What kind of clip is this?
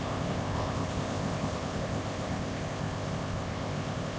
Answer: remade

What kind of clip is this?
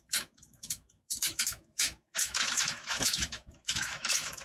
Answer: remade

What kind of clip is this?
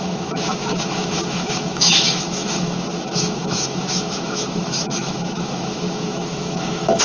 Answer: remade